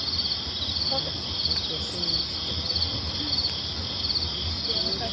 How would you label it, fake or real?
real